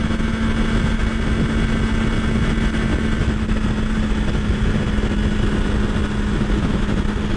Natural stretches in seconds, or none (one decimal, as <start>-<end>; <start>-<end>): 0.0-7.4